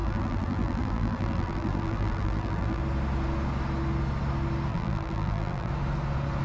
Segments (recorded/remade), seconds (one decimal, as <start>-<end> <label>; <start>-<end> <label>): 0.0-2.8 remade; 2.8-4.7 recorded; 4.7-5.7 remade; 5.7-6.4 recorded